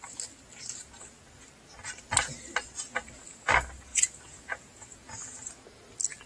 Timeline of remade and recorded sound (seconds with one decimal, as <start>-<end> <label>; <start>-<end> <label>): 0.0-3.9 recorded; 3.9-5.5 remade; 5.5-6.3 recorded